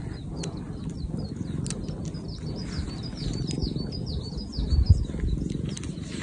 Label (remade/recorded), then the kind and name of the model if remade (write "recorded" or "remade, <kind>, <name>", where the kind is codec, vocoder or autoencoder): recorded